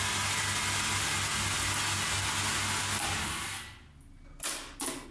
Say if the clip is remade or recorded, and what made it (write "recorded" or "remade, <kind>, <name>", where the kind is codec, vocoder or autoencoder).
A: recorded